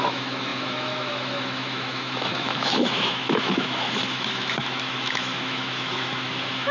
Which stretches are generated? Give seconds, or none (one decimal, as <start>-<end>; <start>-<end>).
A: 0.0-6.7